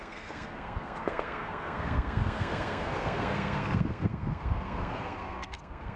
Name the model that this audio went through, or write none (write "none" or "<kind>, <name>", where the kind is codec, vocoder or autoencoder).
codec, SNAC